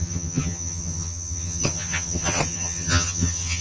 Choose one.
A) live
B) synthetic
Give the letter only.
B